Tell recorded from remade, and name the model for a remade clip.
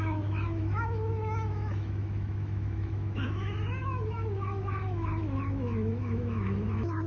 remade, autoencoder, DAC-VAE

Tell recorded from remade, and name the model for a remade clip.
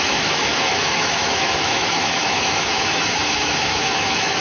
remade, autoencoder, DAC-VAE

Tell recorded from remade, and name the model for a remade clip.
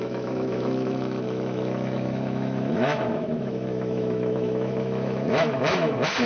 remade, autoencoder, DAC-VAE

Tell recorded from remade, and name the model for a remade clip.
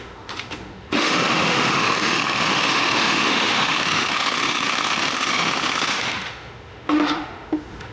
remade, autoencoder, DAC-VAE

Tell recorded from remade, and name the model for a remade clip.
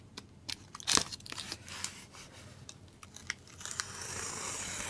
recorded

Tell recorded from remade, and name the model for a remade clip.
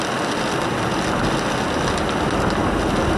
recorded